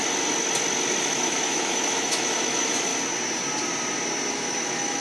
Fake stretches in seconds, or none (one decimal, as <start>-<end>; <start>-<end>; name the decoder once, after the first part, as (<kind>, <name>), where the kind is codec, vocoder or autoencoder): 1.0-2.9 (autoencoder, DAC-VAE); 4.3-5.0

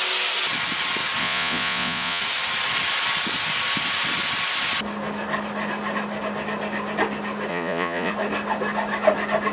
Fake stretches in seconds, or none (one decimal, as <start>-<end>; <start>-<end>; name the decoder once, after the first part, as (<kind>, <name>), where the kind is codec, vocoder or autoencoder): 1.2-2.2 (vocoder, Vocos); 7.5-8.1

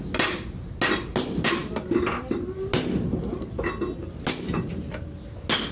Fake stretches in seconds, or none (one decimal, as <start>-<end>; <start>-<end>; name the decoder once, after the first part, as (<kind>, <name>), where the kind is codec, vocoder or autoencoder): none

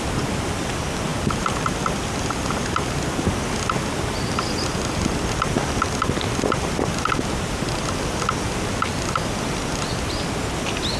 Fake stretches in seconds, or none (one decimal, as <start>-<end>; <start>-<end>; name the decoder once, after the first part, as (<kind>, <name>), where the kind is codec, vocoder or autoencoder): none

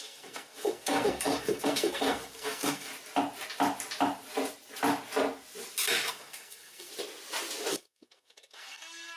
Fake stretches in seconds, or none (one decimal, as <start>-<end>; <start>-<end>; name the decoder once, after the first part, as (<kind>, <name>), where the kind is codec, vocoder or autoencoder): 0.0-2.9 (codec, SNAC); 6.1-6.9; 7.7-9.2

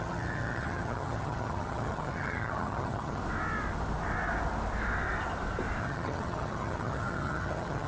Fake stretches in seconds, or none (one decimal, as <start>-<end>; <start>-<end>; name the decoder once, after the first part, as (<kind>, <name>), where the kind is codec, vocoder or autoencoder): 0.0-3.2 (vocoder, HiFi-GAN); 5.8-7.9